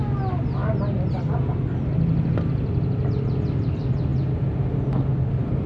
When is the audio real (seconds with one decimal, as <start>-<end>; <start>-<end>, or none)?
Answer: 0.0-5.7